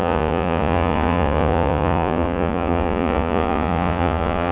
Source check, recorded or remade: remade